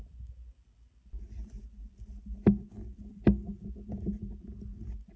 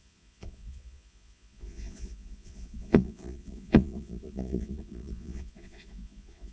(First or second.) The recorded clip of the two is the first